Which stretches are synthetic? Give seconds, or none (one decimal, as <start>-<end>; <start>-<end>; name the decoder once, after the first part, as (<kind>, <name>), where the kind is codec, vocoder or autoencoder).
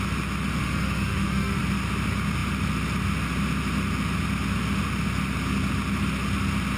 0.6-1.6 (autoencoder, DAC-VAE)